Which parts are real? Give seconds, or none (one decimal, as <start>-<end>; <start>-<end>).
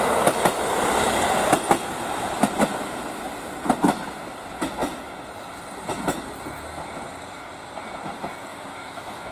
0.0-8.5